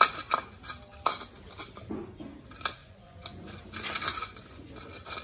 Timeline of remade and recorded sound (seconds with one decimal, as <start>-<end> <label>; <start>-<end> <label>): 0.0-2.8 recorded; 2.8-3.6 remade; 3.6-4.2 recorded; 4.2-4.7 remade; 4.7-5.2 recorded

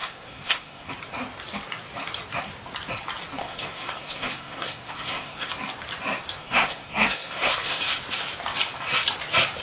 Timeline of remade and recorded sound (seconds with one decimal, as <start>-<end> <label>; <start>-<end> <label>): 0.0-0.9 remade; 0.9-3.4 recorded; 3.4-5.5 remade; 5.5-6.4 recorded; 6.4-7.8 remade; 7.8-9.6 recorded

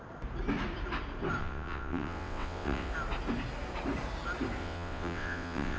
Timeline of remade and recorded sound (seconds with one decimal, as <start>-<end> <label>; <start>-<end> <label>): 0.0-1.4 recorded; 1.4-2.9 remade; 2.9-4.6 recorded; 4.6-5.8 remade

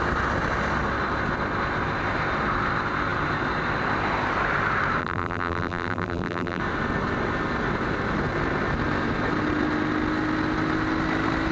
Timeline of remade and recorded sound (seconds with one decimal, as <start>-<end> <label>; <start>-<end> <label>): 0.0-5.0 recorded; 5.0-6.6 remade; 6.6-11.5 recorded

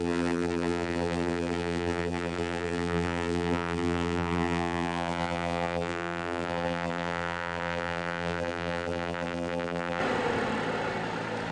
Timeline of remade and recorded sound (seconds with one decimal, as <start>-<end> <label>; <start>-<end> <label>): 0.0-10.0 remade; 10.0-11.5 recorded